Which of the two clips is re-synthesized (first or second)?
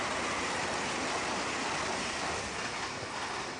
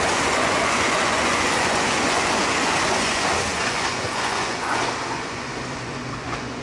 second